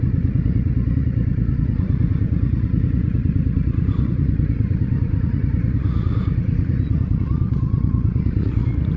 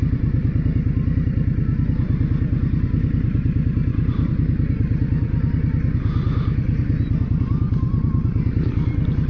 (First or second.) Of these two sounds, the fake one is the first